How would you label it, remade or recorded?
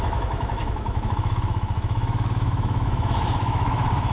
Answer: remade